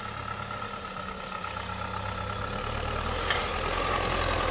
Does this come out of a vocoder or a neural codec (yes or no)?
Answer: no